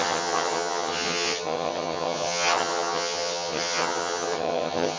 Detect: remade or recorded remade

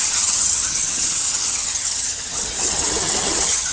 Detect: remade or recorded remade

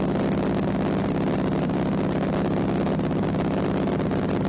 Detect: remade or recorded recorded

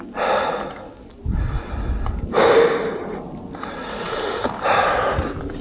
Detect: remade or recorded recorded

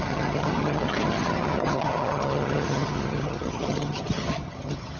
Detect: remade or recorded remade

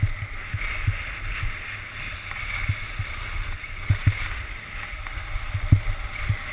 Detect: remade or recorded recorded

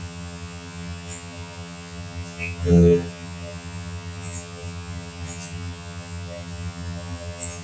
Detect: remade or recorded remade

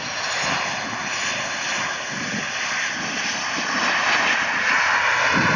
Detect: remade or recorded recorded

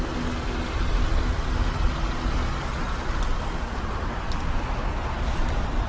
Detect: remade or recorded recorded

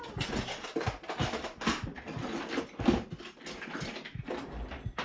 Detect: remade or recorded recorded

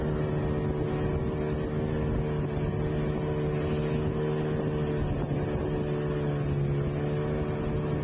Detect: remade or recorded recorded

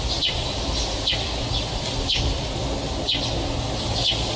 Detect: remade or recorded recorded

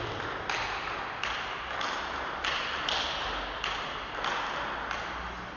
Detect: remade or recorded recorded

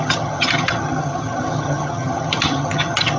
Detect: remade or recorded remade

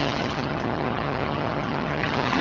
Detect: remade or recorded remade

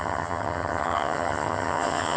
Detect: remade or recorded remade